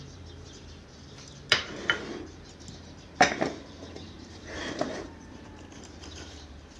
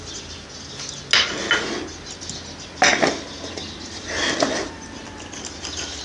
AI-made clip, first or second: first